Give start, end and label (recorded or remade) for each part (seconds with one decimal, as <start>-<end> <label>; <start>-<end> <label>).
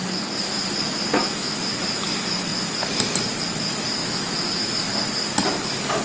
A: 0.0-1.2 recorded; 1.2-1.7 remade; 1.7-4.0 recorded; 4.0-4.8 remade; 4.8-6.0 recorded